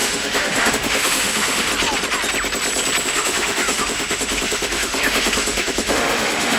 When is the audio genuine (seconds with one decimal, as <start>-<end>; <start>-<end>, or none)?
1.7-3.0